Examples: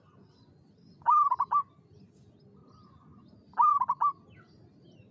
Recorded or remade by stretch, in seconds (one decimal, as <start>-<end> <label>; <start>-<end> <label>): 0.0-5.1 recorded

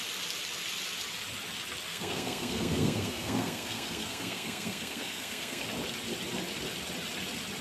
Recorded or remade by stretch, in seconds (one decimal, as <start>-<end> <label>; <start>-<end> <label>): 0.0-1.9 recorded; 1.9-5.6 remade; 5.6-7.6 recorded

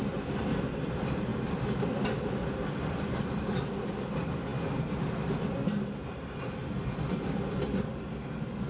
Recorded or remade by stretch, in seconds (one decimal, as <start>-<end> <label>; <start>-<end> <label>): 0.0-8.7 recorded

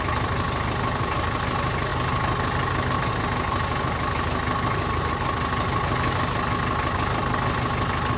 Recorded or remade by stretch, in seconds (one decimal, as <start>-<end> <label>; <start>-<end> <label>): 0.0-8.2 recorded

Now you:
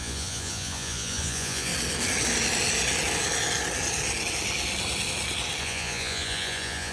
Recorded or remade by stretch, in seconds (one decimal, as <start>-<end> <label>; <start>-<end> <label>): 0.0-1.7 remade; 1.7-5.6 recorded; 5.6-6.9 remade

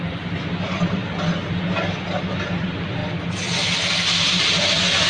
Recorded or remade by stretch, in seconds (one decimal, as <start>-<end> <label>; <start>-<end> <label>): 0.0-1.0 remade; 1.0-1.7 recorded; 1.7-3.0 remade; 3.0-4.4 recorded; 4.4-5.1 remade

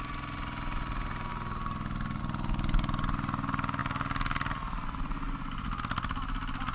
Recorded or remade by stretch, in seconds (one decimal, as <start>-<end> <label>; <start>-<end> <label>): 0.0-6.7 recorded

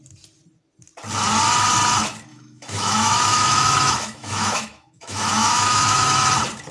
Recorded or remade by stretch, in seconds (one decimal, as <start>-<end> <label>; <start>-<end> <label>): 0.0-2.3 recorded; 2.3-6.3 remade; 6.3-6.7 recorded